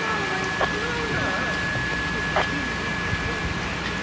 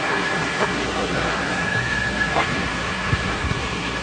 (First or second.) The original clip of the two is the first